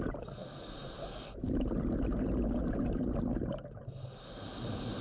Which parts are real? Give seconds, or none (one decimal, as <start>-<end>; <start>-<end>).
0.0-5.0